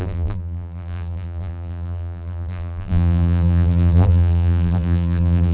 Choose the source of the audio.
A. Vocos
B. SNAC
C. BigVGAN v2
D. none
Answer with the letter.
C